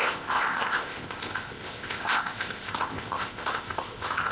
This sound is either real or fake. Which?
fake